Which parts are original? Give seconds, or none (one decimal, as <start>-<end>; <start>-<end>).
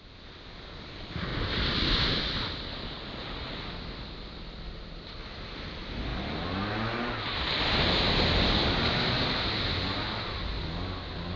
0.0-11.4